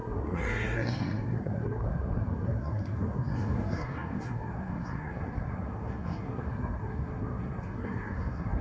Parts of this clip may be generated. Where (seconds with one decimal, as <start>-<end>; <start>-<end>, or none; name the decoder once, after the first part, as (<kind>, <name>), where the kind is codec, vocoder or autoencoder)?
0.0-8.6 (codec, SNAC)